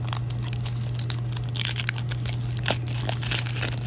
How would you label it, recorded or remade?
recorded